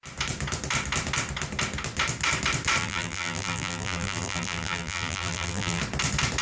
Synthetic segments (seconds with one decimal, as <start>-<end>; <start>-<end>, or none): 2.8-5.8